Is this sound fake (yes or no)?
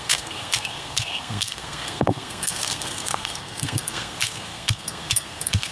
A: yes